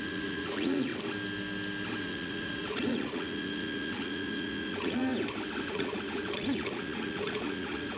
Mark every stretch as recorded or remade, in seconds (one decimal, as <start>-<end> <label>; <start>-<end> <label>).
0.0-0.9 remade; 0.9-2.0 recorded; 2.0-5.1 remade; 5.1-5.6 recorded; 5.6-8.0 remade